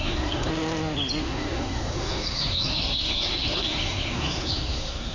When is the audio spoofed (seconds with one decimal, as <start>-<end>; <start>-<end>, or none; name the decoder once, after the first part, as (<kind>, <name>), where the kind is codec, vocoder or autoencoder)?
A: 0.0-0.5 (codec, SNAC); 1.2-5.1